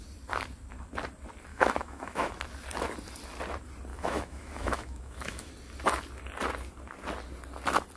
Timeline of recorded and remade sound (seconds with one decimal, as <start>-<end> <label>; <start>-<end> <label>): 0.0-1.5 recorded; 1.5-2.3 remade; 2.3-3.9 recorded; 3.9-5.5 remade; 5.5-8.0 recorded